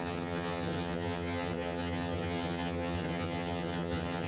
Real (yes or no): no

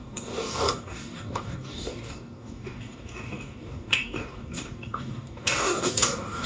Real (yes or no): no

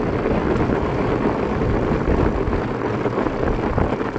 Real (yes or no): yes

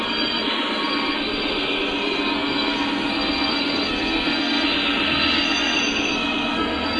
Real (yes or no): no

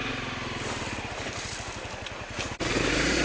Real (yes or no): yes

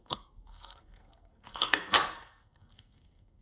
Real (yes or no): no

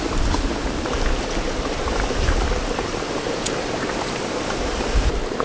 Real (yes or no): yes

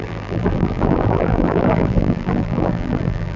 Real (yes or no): no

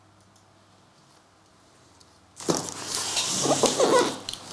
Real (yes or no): yes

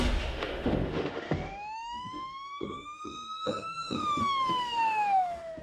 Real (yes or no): no